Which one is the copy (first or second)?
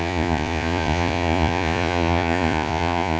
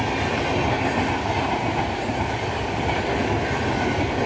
first